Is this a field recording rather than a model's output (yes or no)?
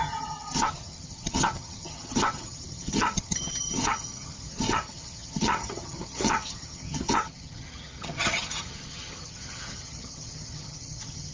no